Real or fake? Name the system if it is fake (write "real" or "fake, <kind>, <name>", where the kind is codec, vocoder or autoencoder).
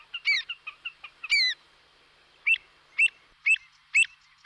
real